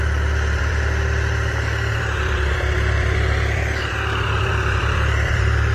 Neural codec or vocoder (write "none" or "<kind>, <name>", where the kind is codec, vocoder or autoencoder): vocoder, BigVGAN v2